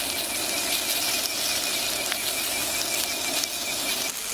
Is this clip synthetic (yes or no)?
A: no